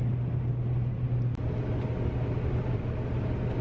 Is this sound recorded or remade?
recorded